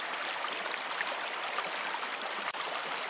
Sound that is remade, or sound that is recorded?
recorded